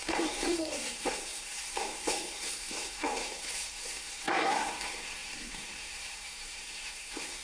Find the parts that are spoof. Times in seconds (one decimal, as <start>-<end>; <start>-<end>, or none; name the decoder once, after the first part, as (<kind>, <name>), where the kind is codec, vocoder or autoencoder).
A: 0.0-7.4 (codec, SNAC)